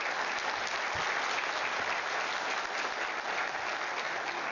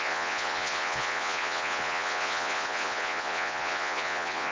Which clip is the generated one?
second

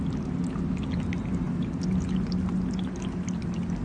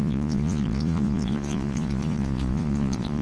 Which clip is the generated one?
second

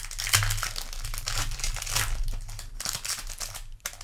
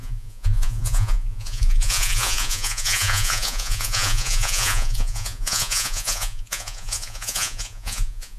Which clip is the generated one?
second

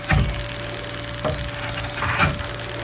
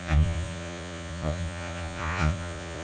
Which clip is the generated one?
second